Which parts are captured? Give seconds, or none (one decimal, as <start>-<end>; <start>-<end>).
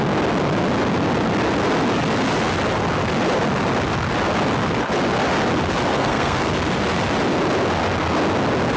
0.0-5.9; 6.5-8.8